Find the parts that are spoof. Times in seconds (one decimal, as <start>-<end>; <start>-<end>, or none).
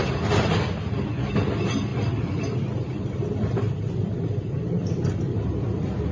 1.9-5.6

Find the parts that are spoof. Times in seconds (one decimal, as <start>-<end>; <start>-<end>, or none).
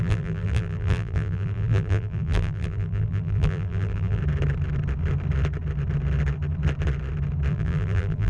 0.0-4.2; 7.5-8.3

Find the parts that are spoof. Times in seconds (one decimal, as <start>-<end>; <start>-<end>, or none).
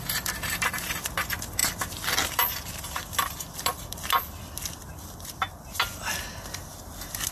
none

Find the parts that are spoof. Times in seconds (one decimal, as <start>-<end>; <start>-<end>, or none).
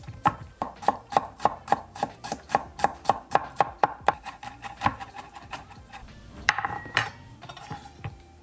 0.0-8.4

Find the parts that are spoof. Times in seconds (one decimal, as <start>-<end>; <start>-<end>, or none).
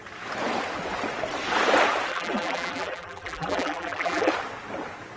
2.1-4.3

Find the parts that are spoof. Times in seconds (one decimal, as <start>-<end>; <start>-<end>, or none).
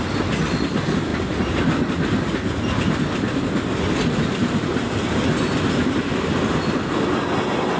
4.4-5.0; 6.1-6.8